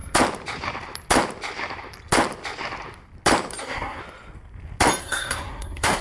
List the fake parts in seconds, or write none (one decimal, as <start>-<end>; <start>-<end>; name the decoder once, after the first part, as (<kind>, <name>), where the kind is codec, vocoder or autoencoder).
3.6-4.0 (codec, SNAC); 5.0-6.0